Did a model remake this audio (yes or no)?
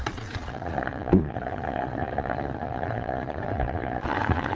yes